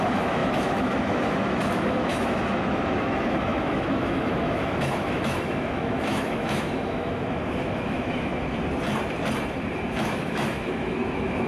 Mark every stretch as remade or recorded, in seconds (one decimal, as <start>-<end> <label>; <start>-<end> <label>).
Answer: 0.0-8.3 remade; 8.3-9.9 recorded; 9.9-11.5 remade